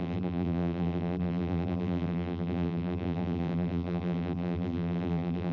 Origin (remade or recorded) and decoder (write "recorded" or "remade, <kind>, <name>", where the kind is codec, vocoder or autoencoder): remade, vocoder, BigVGAN v2